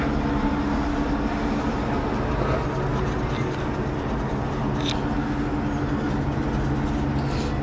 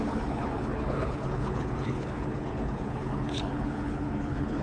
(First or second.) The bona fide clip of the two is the first